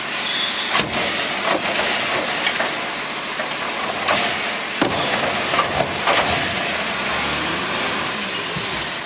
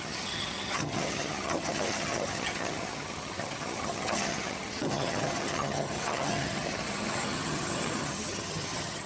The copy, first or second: second